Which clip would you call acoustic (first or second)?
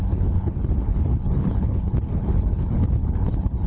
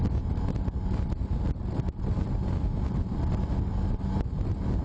second